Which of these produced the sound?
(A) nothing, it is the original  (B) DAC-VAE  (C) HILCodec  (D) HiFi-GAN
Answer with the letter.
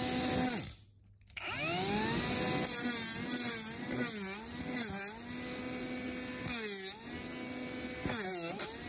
A